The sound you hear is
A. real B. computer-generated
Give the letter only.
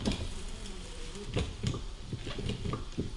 B